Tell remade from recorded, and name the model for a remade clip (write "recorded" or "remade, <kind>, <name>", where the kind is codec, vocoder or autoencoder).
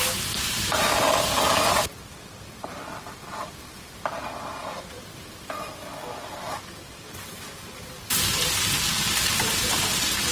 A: remade, vocoder, BigVGAN v2